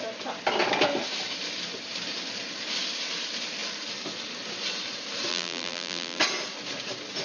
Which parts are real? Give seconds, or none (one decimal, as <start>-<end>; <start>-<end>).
0.0-5.3; 6.2-7.2